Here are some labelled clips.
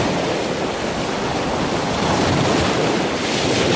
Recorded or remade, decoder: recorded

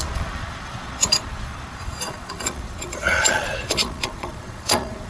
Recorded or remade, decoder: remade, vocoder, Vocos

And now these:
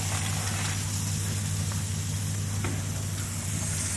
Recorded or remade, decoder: recorded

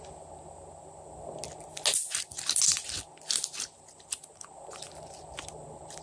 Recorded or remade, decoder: recorded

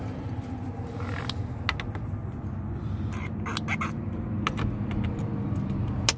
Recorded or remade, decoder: recorded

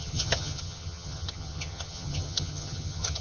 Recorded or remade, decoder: remade, vocoder, HiFi-GAN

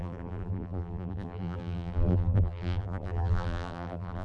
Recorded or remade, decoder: remade, vocoder, BigVGAN v2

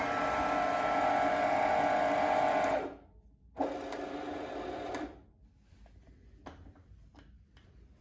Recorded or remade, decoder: recorded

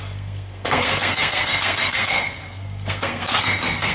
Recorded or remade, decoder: remade, codec, SNAC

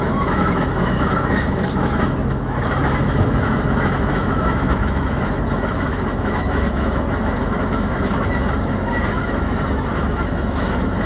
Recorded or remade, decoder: remade, autoencoder, DAC-VAE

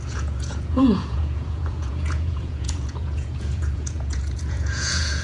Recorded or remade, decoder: remade, vocoder, Vocos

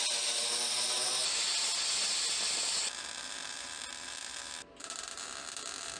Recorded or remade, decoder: recorded